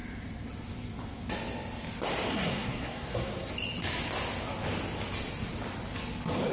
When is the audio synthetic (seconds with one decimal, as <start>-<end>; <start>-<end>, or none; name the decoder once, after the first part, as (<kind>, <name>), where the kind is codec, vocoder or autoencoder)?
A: 2.3-3.5 (codec, SNAC)